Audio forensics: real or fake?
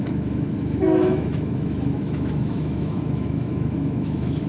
fake